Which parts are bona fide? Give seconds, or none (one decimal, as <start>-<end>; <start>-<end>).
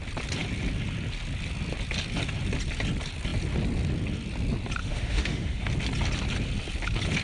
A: 0.0-4.8; 5.7-7.2